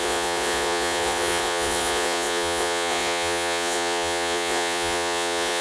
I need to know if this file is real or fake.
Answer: fake